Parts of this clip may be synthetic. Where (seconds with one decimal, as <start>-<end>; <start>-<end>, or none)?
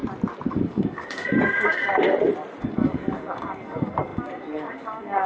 0.5-1.9; 2.6-5.3